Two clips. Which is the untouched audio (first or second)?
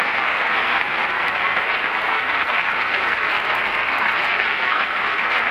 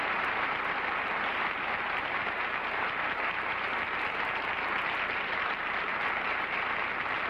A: second